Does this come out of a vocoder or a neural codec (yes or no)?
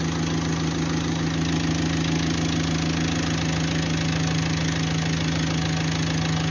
no